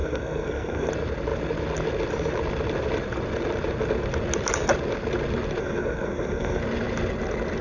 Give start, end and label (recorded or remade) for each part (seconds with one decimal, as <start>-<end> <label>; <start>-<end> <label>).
0.0-0.9 remade; 0.9-5.6 recorded; 5.6-6.6 remade; 6.6-7.6 recorded